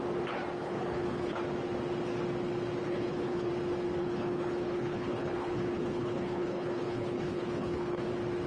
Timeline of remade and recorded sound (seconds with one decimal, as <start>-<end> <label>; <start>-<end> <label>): 0.0-0.6 recorded; 0.6-1.4 remade; 1.4-2.8 recorded; 2.8-3.5 remade; 3.5-4.0 recorded; 4.0-8.1 remade; 8.1-8.5 recorded